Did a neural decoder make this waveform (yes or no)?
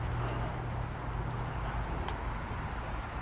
no